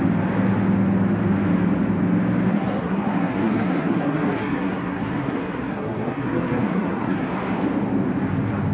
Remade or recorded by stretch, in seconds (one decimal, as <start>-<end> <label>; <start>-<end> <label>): 0.0-2.5 recorded; 2.5-7.3 remade; 7.3-8.7 recorded